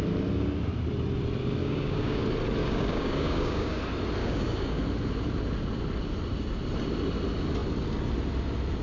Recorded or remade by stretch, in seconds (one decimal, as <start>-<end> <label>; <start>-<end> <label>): 0.0-1.6 recorded; 1.6-2.2 remade; 2.2-2.6 recorded; 2.6-3.8 remade; 3.8-4.2 recorded; 4.2-4.8 remade; 4.8-8.8 recorded